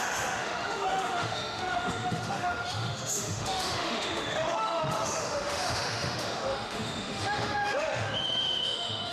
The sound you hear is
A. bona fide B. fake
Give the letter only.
B